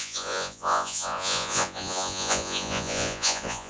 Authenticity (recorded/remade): remade